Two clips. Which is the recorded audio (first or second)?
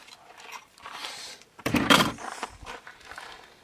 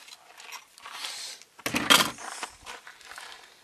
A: second